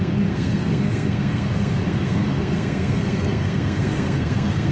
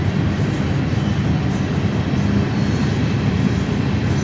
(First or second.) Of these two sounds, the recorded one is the second